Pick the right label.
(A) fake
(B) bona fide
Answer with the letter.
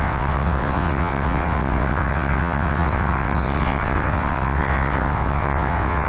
A